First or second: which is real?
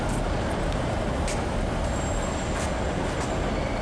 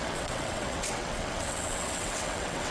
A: first